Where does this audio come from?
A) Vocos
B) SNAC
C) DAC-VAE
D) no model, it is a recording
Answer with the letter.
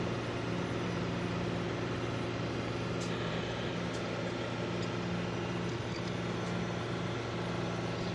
D